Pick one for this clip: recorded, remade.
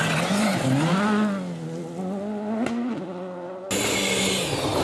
recorded